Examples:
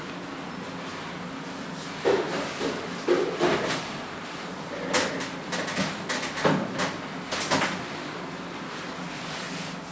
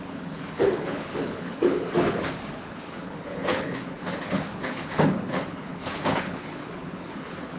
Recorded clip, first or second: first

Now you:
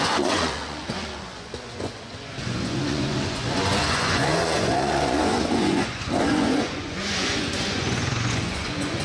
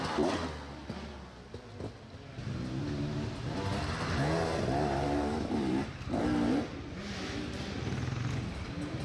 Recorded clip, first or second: second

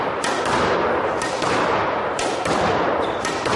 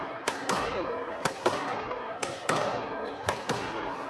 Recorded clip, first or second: first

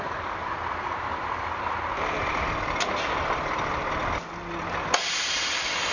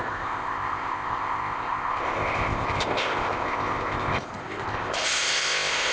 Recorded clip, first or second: first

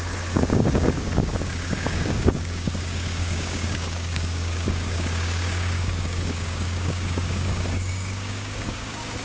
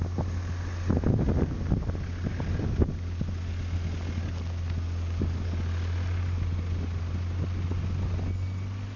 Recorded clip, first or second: second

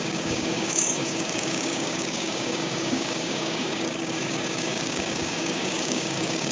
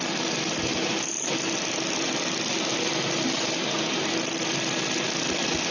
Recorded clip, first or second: second